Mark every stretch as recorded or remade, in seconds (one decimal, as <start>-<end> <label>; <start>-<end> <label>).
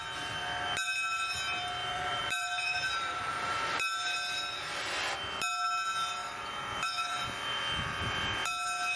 0.0-1.8 recorded; 1.8-3.7 remade; 3.7-6.2 recorded; 6.2-7.6 remade; 7.6-9.0 recorded